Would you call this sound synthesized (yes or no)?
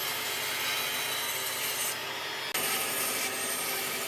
no